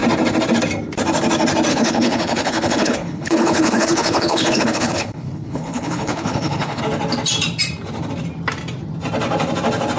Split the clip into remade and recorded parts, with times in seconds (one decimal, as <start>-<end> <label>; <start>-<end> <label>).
0.0-1.7 recorded; 1.7-6.8 remade; 6.8-10.0 recorded